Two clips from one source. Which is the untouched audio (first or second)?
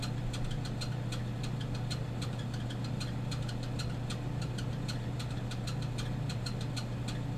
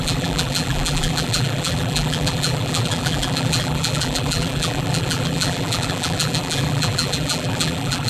first